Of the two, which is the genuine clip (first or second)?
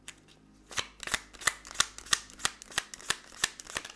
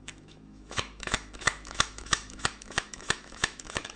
first